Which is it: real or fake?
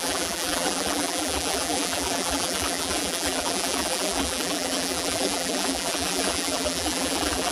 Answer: fake